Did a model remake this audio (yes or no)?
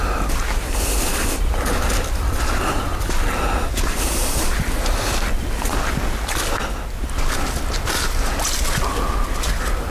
no